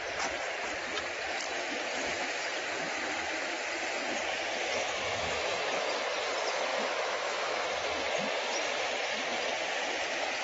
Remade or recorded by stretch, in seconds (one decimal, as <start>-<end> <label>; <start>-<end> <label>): 0.0-4.6 recorded; 4.6-5.8 remade; 5.8-6.7 recorded; 6.7-7.6 remade; 7.6-10.4 recorded